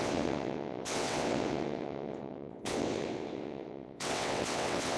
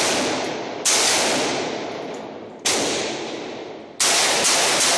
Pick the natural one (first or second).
second